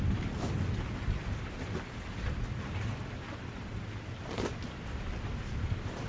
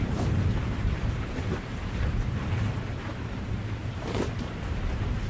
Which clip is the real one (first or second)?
first